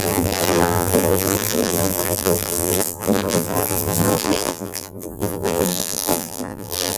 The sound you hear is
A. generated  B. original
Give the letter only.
A